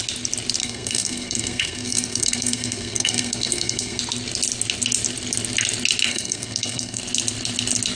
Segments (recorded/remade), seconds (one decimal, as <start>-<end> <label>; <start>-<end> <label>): 0.0-0.6 recorded; 0.6-4.0 remade; 4.0-6.1 recorded; 6.1-7.0 remade; 7.0-8.0 recorded